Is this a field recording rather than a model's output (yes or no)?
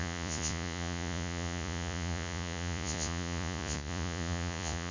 no